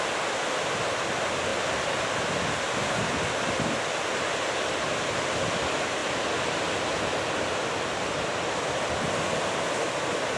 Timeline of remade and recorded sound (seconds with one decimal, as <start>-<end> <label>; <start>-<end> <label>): 0.0-10.4 recorded